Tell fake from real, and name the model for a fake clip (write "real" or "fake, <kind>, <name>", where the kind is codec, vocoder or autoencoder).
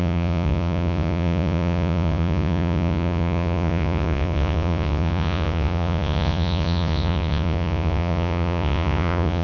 fake, vocoder, Vocos